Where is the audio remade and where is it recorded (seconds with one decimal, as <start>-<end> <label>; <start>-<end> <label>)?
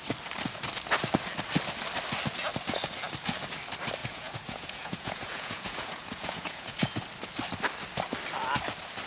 0.0-4.0 recorded; 4.0-7.0 remade; 7.0-9.1 recorded